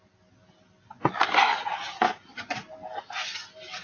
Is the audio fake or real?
real